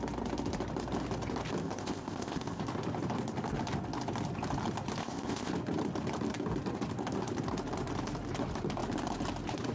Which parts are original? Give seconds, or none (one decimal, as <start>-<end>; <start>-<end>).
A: 0.0-1.6; 2.6-5.0; 5.5-9.7